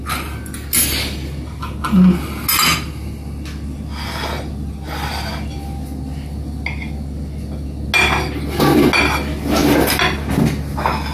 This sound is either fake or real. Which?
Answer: real